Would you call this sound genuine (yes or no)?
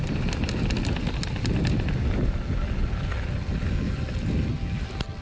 yes